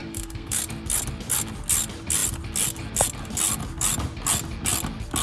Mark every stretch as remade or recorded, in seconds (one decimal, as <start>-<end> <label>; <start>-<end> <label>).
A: 0.0-0.6 remade; 0.6-5.2 recorded